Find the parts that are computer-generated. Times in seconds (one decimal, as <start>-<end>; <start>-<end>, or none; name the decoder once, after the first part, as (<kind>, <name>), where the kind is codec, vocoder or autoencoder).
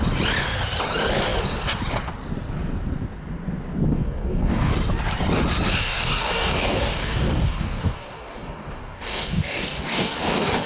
3.9-4.7 (codec, DAC); 5.7-10.7